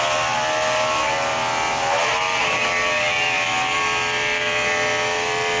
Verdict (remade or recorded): remade